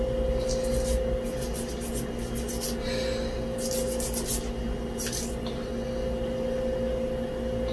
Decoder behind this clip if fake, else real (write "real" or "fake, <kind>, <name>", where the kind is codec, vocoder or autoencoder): real